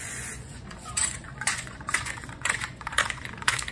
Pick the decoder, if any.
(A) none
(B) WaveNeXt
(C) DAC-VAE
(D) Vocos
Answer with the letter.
D